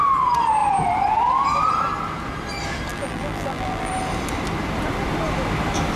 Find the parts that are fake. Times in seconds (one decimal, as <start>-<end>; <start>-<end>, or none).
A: 2.9-3.9